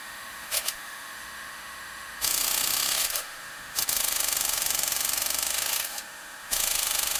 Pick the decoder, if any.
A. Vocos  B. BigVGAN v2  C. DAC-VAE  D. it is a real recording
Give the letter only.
C